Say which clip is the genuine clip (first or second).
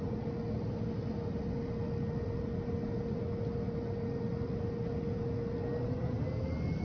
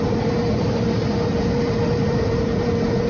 first